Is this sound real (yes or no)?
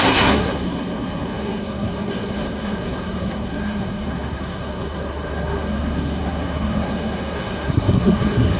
no